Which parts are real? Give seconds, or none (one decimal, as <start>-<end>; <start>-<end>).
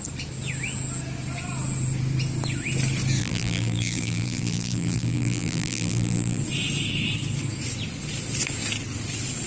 0.0-3.2; 6.4-9.5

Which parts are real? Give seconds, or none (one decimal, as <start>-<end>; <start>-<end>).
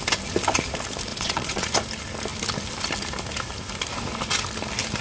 0.0-1.1; 1.7-5.0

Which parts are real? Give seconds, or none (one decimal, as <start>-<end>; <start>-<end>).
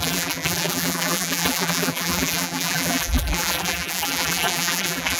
none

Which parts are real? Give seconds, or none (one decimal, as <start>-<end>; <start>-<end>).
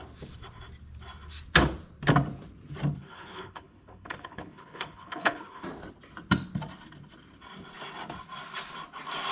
0.0-3.0; 5.6-9.3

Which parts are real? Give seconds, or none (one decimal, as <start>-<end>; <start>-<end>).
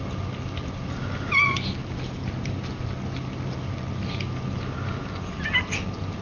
0.0-6.2